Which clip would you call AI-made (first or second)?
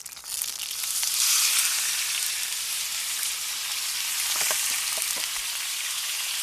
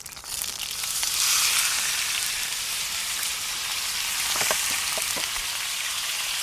second